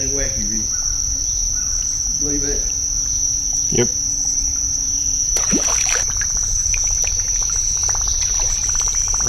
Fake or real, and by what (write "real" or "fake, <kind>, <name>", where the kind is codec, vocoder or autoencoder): fake, vocoder, BigVGAN v2